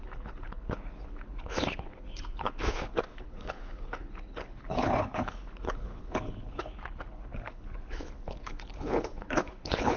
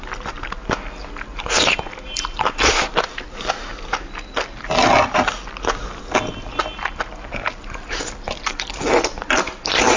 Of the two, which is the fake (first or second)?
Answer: first